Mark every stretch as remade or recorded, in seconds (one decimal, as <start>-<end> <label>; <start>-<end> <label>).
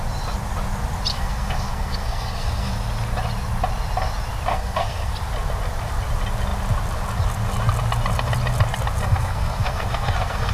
0.0-1.1 recorded; 1.1-2.7 remade; 2.7-4.5 recorded; 4.5-5.1 remade; 5.1-9.0 recorded; 9.0-10.5 remade